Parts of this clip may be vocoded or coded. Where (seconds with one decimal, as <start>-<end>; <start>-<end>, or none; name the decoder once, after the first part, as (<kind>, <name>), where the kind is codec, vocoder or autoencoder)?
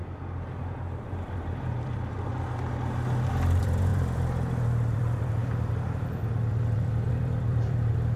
0.0-2.3 (vocoder, BigVGAN v2); 3.3-8.2